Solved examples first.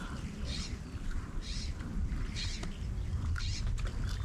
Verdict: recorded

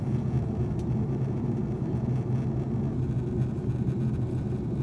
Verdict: recorded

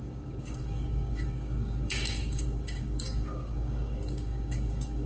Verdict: remade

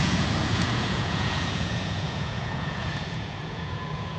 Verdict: remade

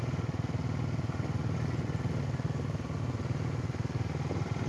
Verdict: recorded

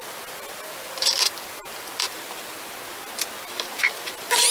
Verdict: recorded